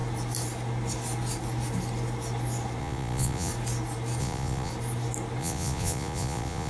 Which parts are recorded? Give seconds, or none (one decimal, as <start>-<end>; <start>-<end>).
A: 0.0-2.8; 3.5-4.2; 4.7-5.4